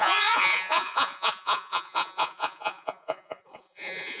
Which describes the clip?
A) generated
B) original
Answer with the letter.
A